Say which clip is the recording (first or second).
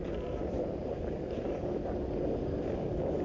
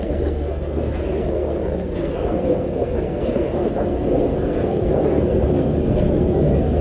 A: first